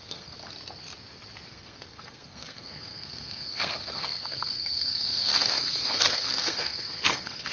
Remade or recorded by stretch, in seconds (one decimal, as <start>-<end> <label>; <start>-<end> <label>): 0.0-0.4 remade; 0.4-1.5 recorded; 1.5-7.5 remade